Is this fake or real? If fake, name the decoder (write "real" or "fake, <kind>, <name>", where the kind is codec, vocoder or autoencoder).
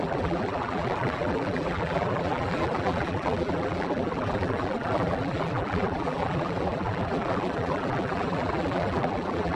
fake, vocoder, BigVGAN v2